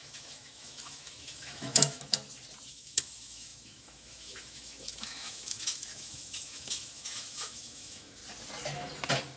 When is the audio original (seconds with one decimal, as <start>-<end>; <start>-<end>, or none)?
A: 2.2-2.7; 8.2-9.4

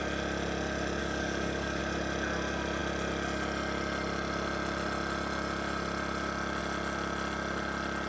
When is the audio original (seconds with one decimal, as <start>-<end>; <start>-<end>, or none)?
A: 0.0-1.0; 1.8-8.1

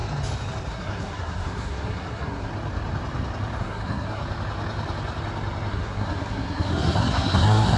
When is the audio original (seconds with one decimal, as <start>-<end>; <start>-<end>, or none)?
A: 0.0-0.7; 2.5-3.6; 4.2-5.7

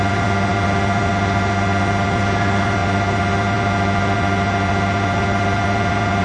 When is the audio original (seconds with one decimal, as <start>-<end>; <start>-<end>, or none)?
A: 0.0-6.2

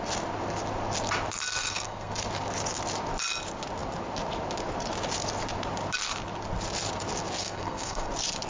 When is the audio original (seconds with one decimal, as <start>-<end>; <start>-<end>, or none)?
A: 0.0-1.6; 2.1-7.4; 8.1-8.5

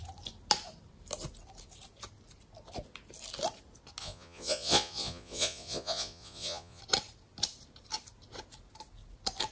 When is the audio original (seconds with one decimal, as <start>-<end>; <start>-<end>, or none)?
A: 0.0-4.0; 6.8-9.5

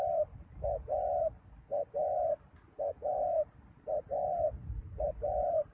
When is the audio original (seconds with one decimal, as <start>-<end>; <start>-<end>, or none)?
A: 0.0-5.7